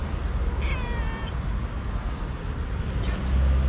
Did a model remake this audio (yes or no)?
no